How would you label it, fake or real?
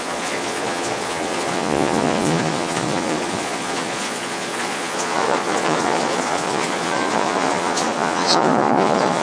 fake